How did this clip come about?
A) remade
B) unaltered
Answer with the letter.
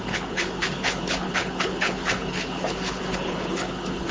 A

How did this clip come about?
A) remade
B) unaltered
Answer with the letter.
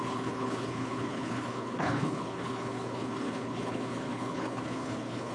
A